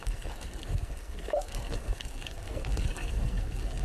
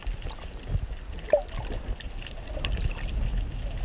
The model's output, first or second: first